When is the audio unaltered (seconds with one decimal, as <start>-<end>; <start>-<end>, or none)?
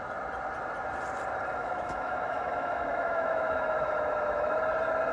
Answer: 0.0-1.6; 4.6-5.1